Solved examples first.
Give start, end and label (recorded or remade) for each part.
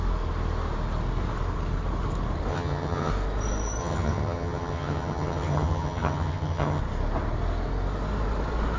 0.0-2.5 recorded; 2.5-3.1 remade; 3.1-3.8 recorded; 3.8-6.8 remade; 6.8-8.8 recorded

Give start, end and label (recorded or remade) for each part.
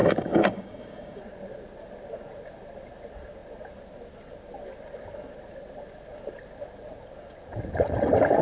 0.0-1.2 remade; 1.2-8.4 recorded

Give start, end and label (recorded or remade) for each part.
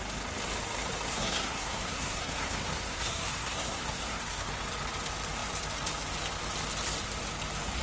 0.0-1.1 recorded; 1.1-4.5 remade; 4.5-7.8 recorded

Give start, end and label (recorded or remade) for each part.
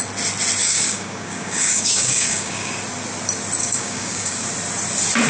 0.0-0.6 recorded; 0.6-2.7 remade; 2.7-3.6 recorded; 3.6-4.4 remade; 4.4-5.3 recorded